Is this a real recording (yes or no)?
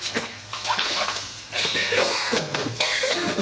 no